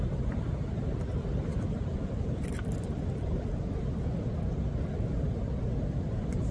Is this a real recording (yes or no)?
no